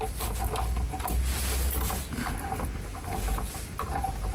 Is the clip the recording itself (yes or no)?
yes